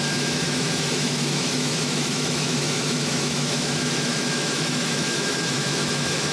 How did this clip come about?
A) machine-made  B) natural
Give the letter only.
A